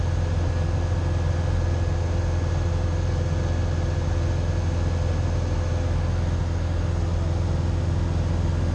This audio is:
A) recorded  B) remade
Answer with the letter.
A